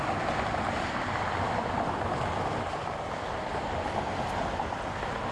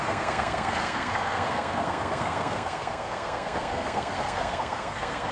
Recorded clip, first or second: first